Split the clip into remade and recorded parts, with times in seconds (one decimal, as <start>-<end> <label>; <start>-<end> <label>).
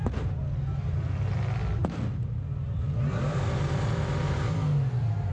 0.0-5.3 recorded